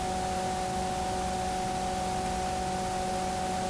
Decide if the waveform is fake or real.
real